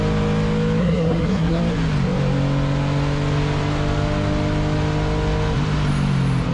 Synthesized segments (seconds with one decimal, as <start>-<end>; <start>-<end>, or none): 0.8-1.6